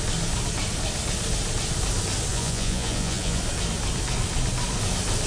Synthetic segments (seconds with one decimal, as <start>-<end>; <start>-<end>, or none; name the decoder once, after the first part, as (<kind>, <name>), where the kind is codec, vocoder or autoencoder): 2.3-3.4 (vocoder, Vocos)